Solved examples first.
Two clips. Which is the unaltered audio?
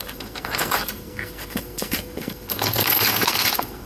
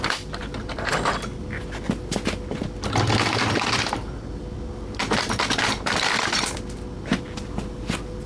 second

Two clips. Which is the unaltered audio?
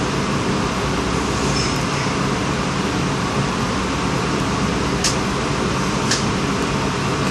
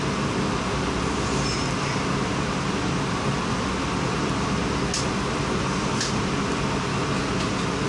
second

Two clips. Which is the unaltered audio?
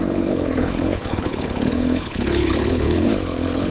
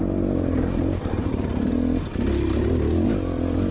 second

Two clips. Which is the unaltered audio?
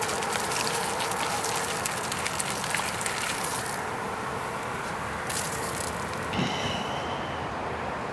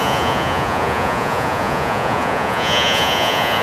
first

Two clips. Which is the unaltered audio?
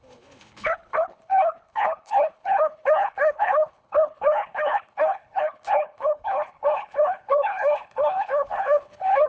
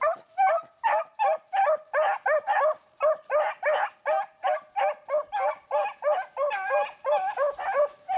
second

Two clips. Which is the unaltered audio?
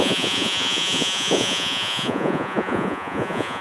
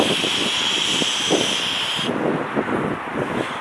second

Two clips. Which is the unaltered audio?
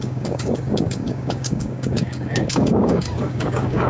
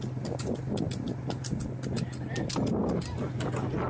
second